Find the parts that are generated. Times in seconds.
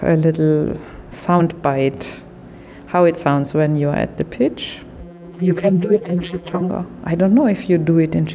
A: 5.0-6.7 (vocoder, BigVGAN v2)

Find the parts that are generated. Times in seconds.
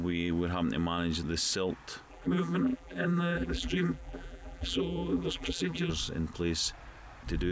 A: 2.1-5.9 (vocoder, BigVGAN v2)